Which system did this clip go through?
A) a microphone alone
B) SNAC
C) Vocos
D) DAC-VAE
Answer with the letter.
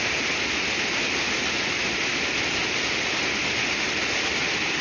A